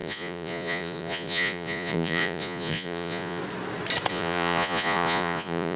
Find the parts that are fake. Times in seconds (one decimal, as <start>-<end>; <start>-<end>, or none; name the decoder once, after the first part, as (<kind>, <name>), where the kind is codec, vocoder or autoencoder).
0.0-3.4 (vocoder, Vocos); 4.1-5.8

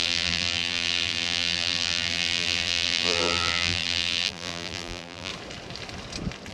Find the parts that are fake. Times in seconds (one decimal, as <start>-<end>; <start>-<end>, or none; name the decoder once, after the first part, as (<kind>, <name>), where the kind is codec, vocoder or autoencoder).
0.0-5.3 (vocoder, BigVGAN v2)